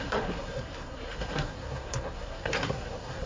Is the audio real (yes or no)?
no